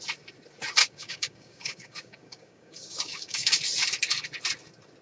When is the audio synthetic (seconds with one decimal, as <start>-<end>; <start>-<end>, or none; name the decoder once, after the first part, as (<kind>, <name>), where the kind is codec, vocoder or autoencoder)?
0.8-3.6 (codec, DAC)